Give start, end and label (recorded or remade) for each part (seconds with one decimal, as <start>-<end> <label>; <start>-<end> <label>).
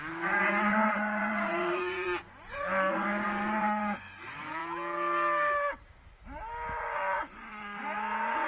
0.0-4.6 remade; 4.6-6.8 recorded; 6.8-8.5 remade